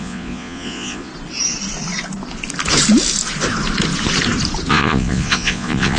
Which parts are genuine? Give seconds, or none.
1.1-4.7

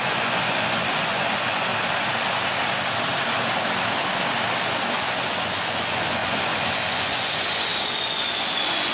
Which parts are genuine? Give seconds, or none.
1.7-4.9

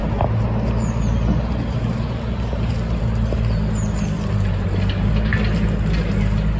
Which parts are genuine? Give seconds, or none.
0.0-6.6

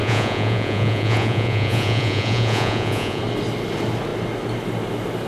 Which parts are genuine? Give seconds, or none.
3.2-5.3

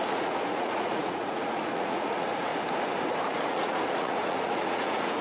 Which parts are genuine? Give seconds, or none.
2.5-3.5

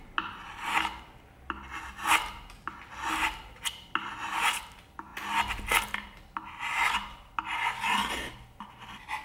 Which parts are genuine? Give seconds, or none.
0.0-9.2

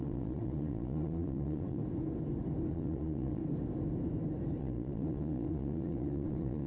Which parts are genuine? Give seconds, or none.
1.8-2.7; 3.4-4.6